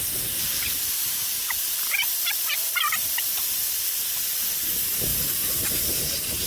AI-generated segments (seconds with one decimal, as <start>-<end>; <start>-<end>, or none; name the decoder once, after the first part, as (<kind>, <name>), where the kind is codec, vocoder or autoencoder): 0.0-6.5 (vocoder, BigVGAN v2)